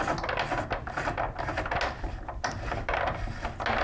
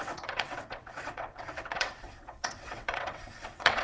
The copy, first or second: second